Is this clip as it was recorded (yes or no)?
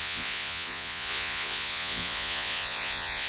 no